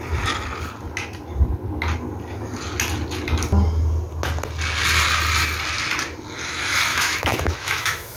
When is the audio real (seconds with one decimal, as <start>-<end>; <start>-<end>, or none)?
0.0-6.9